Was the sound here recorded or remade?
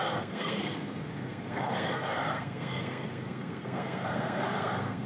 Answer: remade